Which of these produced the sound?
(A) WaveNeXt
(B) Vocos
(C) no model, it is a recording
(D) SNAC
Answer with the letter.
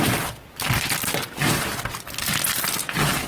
C